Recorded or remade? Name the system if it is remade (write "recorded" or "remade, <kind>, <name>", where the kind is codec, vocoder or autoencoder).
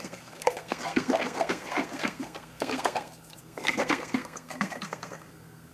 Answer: remade, codec, SNAC